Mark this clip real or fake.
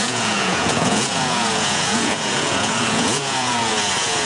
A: fake